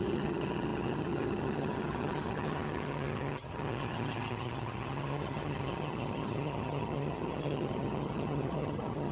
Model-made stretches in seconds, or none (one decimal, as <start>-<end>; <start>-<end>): 0.0-9.1